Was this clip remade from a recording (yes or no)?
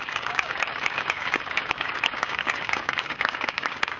yes